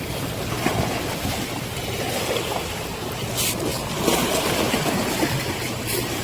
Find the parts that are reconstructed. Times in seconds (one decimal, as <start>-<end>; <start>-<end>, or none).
none